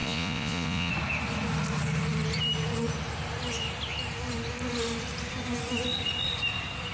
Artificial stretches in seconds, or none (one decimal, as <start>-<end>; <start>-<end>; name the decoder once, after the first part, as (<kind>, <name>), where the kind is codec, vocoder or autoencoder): 0.0-0.9 (vocoder, Vocos)